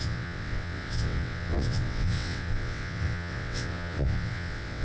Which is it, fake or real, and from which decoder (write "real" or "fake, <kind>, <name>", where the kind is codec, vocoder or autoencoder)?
fake, vocoder, WaveNeXt